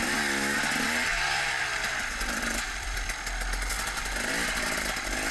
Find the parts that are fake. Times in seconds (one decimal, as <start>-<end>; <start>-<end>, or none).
1.1-4.3